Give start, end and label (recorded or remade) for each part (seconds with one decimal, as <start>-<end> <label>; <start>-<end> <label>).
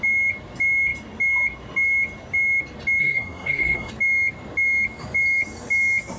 0.0-3.0 recorded; 3.0-3.9 remade; 3.9-6.2 recorded